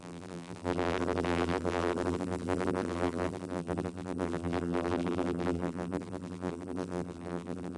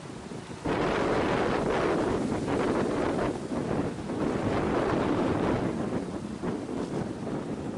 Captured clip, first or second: second